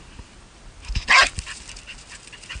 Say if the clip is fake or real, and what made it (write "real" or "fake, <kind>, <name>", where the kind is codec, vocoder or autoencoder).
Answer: real